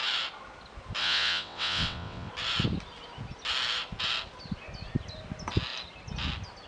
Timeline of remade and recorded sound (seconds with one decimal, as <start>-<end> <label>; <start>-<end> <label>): 0.0-1.0 recorded; 1.0-2.3 remade; 2.3-6.7 recorded